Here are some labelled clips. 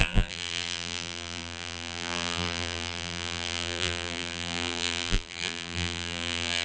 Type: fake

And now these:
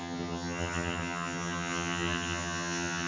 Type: fake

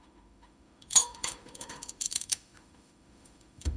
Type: fake